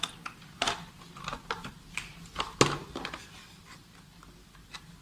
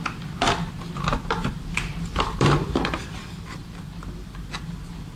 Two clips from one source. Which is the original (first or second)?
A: first